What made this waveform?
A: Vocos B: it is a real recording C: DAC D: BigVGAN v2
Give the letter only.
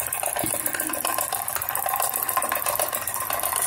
D